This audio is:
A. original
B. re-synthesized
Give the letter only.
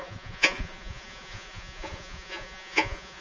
B